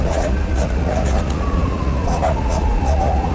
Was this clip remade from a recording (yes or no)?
yes